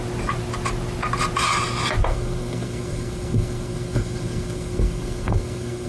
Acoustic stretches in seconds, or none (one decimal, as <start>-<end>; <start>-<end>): 0.0-2.1